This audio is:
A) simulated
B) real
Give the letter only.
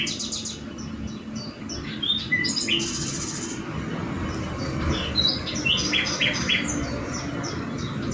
B